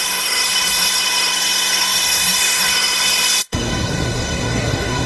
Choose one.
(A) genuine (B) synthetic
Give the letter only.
B